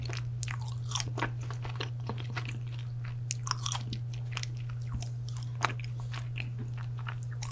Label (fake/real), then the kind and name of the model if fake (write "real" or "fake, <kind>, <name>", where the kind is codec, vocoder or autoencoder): real